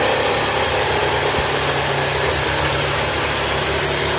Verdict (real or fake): real